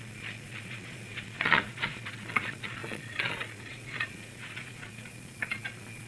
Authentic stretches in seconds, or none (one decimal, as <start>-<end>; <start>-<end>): none

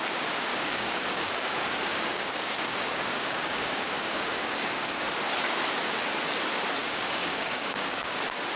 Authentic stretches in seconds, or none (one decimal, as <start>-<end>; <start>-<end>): 0.0-0.5; 5.1-6.8; 8.2-8.6